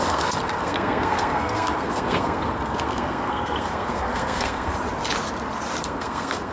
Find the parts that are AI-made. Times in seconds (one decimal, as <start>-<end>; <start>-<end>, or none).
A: 0.0-4.7; 5.8-6.5